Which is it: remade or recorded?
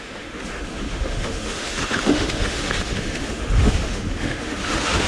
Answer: remade